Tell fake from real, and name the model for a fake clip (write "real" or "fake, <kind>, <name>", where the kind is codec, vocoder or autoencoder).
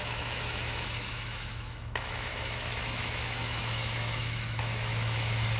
fake, autoencoder, DAC-VAE